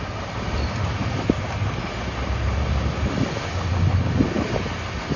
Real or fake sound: real